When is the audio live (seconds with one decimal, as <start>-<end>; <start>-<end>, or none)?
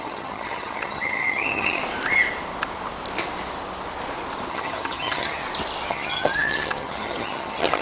1.8-4.5; 5.4-5.9